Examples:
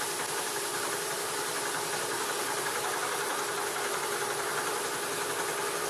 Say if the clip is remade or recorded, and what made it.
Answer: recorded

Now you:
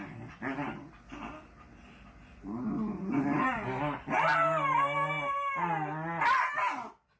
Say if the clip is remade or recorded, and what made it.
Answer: recorded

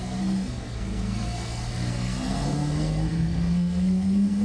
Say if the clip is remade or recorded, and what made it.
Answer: remade, codec, SNAC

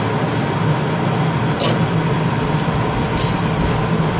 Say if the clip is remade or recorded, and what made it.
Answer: recorded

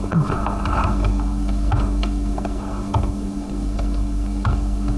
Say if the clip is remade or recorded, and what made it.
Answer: remade, codec, SNAC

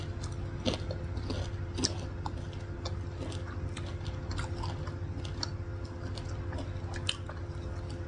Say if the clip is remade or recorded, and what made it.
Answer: recorded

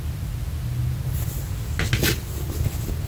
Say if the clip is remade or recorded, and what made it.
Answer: recorded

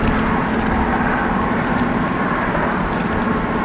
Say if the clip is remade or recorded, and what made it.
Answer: recorded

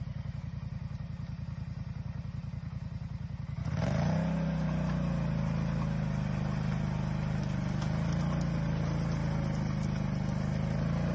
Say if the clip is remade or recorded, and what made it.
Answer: recorded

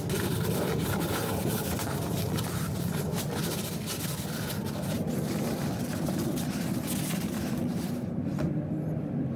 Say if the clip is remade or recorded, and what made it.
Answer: recorded